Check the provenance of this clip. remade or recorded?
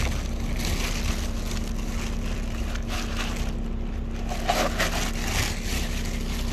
recorded